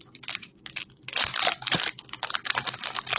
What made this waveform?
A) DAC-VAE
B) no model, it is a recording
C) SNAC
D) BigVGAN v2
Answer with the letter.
B